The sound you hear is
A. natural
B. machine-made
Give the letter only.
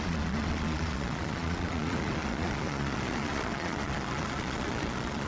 B